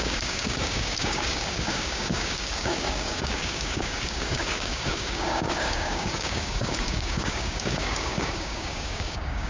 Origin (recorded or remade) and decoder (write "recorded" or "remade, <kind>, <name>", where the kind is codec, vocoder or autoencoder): remade, codec, DAC